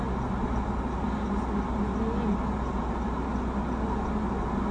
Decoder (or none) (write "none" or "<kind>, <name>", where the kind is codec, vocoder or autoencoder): none